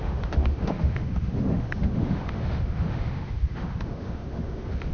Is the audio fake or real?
fake